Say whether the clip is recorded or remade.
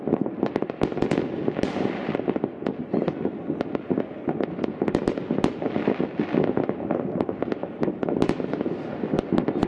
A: recorded